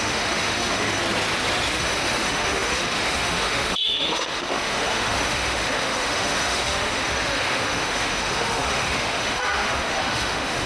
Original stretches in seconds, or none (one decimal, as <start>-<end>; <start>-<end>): 1.0-1.7